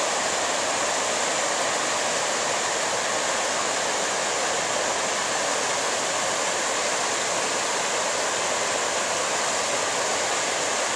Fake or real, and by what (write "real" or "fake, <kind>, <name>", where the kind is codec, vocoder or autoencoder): real